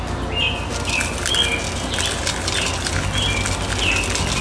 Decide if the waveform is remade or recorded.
recorded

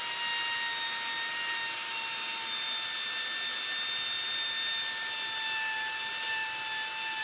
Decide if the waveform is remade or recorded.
recorded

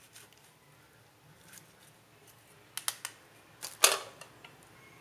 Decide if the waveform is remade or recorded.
recorded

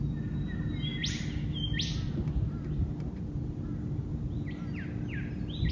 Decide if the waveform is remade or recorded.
recorded